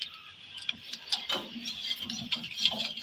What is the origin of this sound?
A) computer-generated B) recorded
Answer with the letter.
B